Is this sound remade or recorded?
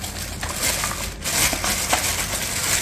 recorded